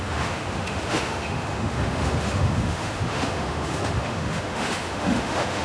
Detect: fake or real fake